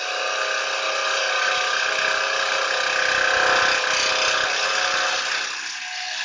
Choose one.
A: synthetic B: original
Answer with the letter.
B